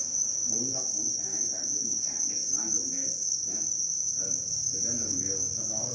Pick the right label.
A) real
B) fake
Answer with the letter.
B